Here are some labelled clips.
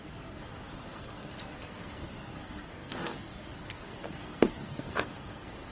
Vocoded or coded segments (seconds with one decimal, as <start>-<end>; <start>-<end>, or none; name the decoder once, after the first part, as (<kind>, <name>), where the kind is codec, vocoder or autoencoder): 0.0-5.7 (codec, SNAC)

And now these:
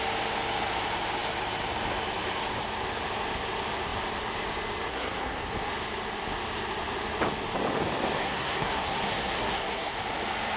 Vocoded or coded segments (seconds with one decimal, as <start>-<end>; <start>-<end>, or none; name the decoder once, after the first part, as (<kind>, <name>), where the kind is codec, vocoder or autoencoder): 4.9-5.7 (codec, SNAC); 8.2-10.0

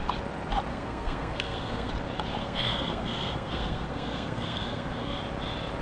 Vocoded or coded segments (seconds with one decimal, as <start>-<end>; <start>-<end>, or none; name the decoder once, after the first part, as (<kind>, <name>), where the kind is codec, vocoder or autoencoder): 0.7-1.9 (codec, SNAC); 2.4-5.2

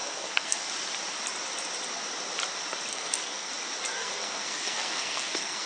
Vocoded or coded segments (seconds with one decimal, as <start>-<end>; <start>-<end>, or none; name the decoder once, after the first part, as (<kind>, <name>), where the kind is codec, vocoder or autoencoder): 0.0-0.7 (codec, SNAC); 2.9-3.5; 3.9-5.7

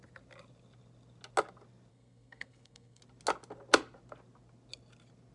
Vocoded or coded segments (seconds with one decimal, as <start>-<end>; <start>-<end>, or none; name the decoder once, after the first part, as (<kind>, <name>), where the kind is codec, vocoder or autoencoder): 1.9-3.0 (codec, SNAC)

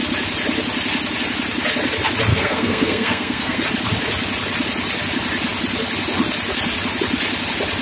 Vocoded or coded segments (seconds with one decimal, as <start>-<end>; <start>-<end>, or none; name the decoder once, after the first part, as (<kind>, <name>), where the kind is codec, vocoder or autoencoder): 2.3-3.6 (codec, SNAC)

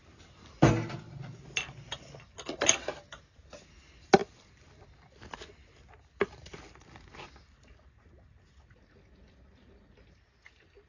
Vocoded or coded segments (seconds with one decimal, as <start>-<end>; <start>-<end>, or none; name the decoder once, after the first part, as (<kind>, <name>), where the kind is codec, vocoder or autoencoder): none

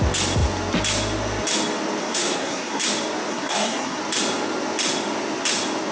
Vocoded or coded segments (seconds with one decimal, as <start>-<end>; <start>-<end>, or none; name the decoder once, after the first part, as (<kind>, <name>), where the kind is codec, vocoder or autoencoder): 2.0-2.8 (codec, SNAC); 3.3-4.0